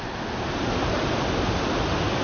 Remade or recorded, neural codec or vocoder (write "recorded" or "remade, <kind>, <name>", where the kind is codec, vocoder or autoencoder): recorded